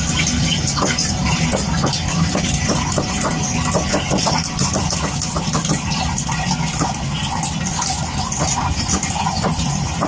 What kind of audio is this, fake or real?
real